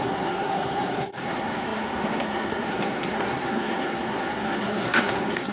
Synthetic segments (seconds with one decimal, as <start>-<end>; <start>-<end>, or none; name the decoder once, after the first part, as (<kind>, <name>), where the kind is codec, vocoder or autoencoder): 0.0-5.5 (codec, SNAC)